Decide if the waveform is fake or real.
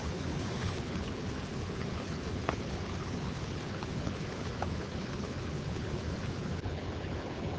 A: fake